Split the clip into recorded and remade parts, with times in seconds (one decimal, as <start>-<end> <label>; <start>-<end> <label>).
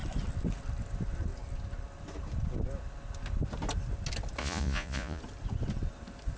0.0-4.4 recorded; 4.4-5.2 remade; 5.2-6.4 recorded